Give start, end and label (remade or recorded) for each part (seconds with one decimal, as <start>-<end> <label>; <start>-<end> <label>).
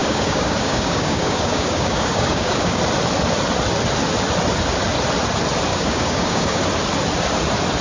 0.0-2.8 remade; 2.8-5.7 recorded; 5.7-6.6 remade; 6.6-7.8 recorded